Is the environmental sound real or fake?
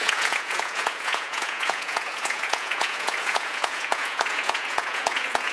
fake